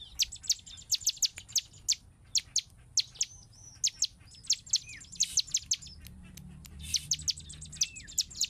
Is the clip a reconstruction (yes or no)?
no